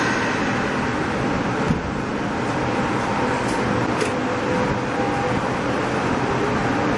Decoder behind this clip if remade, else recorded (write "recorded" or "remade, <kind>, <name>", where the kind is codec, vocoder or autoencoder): recorded